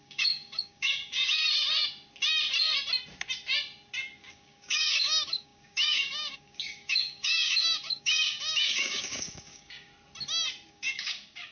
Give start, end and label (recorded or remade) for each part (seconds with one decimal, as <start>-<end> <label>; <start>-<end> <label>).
0.0-1.4 remade; 1.4-4.2 recorded; 4.2-9.9 remade; 9.9-10.7 recorded; 10.7-11.5 remade